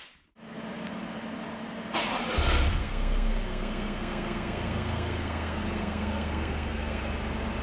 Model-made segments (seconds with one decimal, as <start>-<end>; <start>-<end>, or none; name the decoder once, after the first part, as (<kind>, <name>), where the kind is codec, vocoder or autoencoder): 2.7-7.0 (codec, SNAC)